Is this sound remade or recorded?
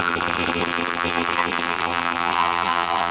remade